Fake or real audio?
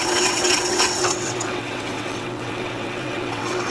fake